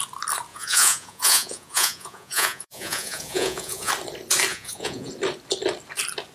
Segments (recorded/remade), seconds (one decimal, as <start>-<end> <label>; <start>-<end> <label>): 0.0-0.5 recorded; 0.5-3.9 remade; 3.9-4.5 recorded; 4.5-5.1 remade; 5.1-6.3 recorded